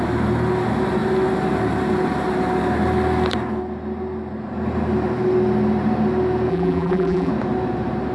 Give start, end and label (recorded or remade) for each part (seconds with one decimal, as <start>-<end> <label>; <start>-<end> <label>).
0.0-6.5 recorded; 6.5-7.3 remade; 7.3-8.1 recorded